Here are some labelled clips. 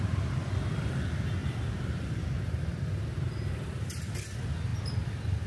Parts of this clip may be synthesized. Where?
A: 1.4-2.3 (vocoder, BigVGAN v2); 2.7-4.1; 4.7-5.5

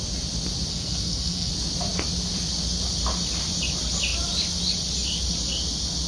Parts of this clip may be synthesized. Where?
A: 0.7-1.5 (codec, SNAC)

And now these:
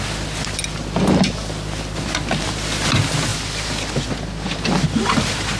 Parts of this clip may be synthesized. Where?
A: none

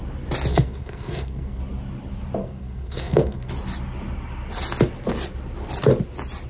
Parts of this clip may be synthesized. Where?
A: 0.5-1.6 (codec, SNAC); 2.4-3.5